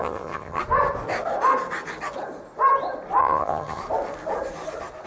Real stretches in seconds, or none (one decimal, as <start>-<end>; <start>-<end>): 0.6-3.2; 3.8-5.1